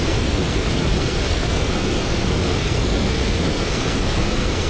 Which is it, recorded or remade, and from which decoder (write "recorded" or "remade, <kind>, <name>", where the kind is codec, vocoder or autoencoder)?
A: remade, codec, SNAC